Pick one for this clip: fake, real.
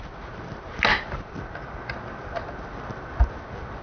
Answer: real